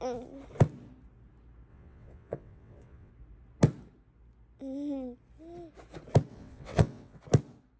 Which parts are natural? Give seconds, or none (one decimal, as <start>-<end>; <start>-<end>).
0.0-1.7; 3.1-6.3; 7.2-7.8